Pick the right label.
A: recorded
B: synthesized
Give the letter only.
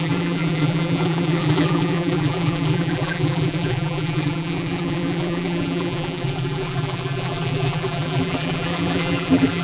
B